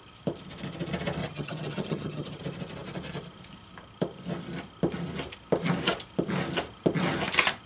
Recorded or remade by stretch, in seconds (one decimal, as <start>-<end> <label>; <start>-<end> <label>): 0.0-1.2 recorded; 1.2-2.4 remade; 2.4-7.7 recorded